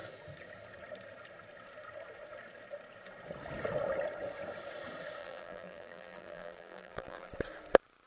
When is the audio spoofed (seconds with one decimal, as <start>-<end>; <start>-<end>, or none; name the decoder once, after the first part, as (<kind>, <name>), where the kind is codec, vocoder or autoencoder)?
5.2-7.3 (vocoder, BigVGAN v2)